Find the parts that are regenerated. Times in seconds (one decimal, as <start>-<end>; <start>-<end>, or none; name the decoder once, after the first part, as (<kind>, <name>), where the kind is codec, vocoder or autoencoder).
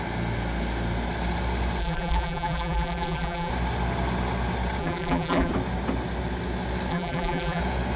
1.8-3.5 (vocoder, BigVGAN v2); 4.8-5.5; 6.9-7.6